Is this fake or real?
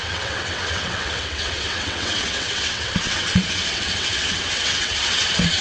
fake